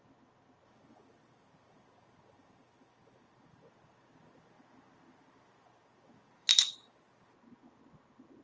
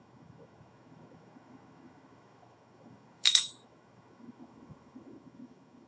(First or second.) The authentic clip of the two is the first